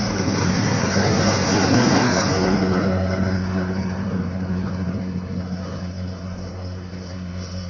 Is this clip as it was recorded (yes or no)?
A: no